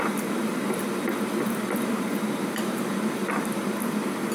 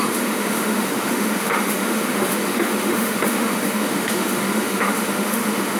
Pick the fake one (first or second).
second